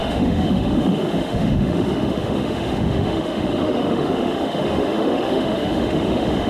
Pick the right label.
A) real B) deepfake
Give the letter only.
B